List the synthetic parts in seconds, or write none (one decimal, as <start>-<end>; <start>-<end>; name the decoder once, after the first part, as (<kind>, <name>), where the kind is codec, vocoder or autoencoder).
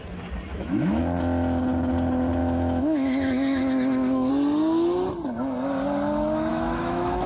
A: 0.5-1.0 (autoencoder, DAC-VAE); 2.4-4.3; 6.5-7.3